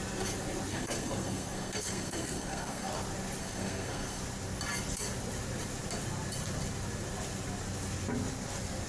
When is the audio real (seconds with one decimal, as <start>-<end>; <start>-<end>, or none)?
0.0-0.7; 2.9-3.4; 4.2-8.9